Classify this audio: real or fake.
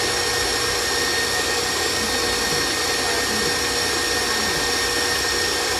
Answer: real